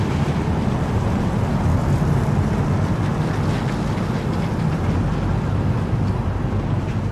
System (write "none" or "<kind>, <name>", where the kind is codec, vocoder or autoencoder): none